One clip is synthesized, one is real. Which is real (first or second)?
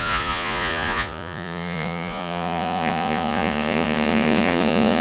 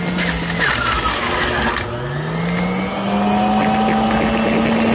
second